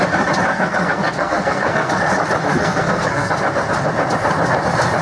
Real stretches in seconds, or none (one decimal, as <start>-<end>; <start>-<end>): 0.0-0.5; 2.0-2.5; 3.3-5.0